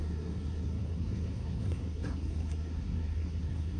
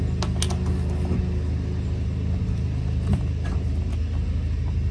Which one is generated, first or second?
first